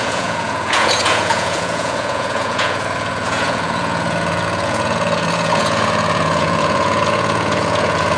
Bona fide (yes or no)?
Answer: no